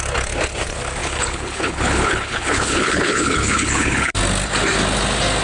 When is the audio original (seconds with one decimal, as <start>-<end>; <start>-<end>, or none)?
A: 0.0-1.0; 4.2-5.4